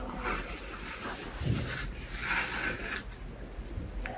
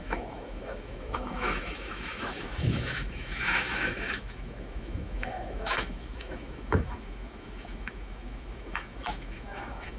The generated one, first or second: second